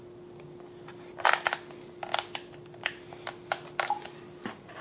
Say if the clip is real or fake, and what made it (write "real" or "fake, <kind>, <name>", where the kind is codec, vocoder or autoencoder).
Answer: real